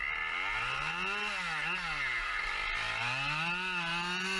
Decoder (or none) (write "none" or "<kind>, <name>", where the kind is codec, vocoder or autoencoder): none